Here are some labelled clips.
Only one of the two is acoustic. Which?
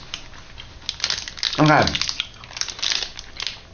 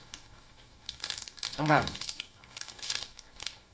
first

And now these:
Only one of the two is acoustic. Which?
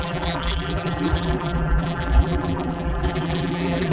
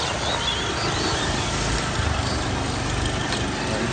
second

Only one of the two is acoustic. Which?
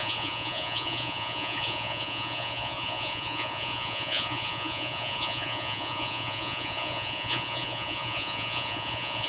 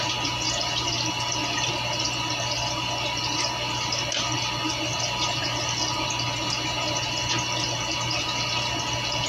second